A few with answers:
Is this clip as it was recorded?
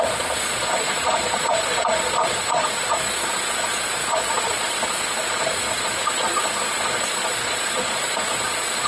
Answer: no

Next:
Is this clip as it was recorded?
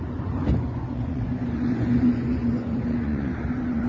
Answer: no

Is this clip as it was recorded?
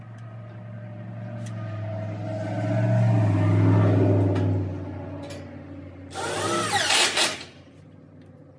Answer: yes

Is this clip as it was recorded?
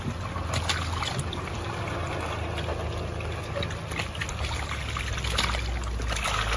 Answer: yes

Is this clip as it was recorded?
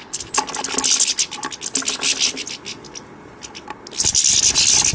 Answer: yes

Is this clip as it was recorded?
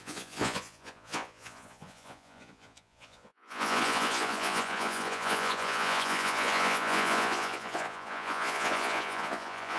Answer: no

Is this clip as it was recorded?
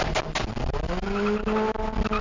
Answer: yes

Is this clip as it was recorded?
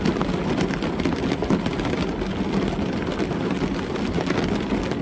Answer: yes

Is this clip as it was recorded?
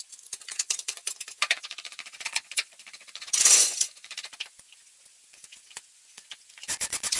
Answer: no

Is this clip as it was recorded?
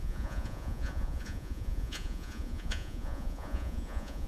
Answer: no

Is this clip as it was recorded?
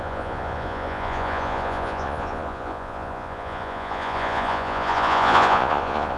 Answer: no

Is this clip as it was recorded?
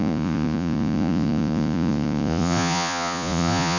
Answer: no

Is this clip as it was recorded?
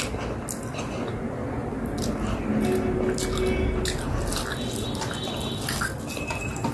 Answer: yes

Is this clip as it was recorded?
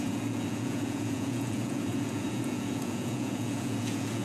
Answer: no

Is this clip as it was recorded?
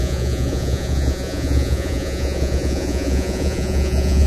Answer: no